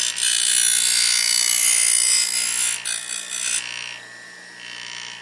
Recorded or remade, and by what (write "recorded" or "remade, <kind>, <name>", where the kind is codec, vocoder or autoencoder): recorded